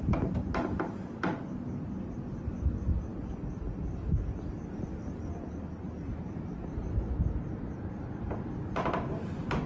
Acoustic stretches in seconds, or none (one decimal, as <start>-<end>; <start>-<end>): 0.0-9.7